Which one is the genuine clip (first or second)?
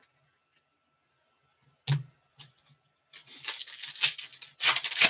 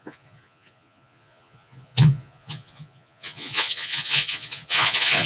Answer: first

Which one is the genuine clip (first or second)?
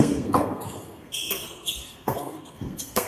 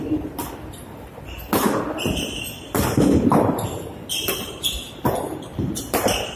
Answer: second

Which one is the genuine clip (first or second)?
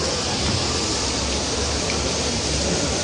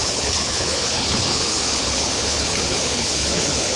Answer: first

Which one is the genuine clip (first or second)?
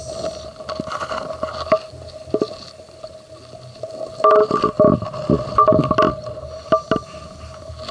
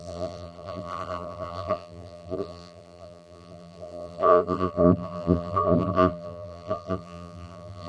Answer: first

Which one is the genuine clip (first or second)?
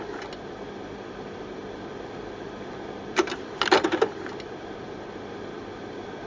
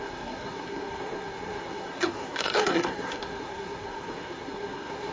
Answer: first